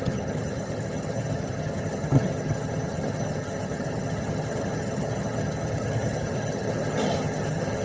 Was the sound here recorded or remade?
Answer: remade